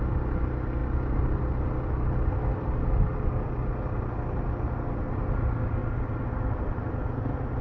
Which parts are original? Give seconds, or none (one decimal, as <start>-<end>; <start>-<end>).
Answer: 0.0-7.6